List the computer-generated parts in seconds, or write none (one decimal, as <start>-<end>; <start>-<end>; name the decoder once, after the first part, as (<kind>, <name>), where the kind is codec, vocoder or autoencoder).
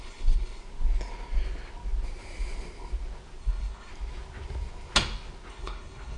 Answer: 0.0-0.6 (codec, HILCodec); 3.4-3.9; 5.5-6.2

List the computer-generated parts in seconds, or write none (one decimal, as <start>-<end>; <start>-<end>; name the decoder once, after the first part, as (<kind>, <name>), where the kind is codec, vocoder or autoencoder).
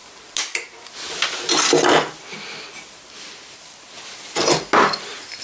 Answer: none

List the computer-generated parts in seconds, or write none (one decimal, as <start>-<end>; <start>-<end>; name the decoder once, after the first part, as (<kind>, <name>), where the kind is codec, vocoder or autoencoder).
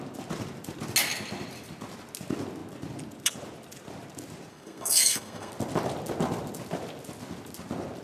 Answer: 4.5-5.5 (codec, SNAC)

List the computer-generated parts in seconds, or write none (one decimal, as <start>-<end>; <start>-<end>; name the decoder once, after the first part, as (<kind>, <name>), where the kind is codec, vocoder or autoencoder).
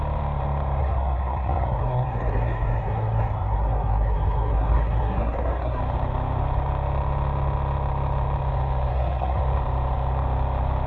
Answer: 0.8-5.8 (codec, SNAC); 8.9-9.4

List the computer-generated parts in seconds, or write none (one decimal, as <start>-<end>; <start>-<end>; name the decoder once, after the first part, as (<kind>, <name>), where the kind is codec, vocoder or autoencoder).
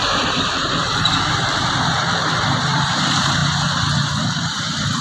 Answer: 0.0-3.4 (vocoder, BigVGAN v2); 4.2-5.0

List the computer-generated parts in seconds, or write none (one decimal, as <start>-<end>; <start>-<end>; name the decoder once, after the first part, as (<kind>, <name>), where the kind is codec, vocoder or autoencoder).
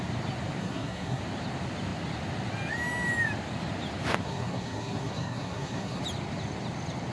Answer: 0.6-1.2 (codec, SNAC); 4.2-6.0